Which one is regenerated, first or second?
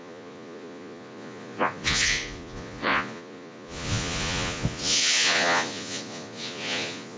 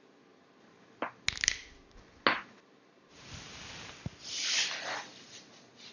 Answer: first